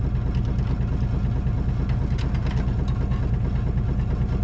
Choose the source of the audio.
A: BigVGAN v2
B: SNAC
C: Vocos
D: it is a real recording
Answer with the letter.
D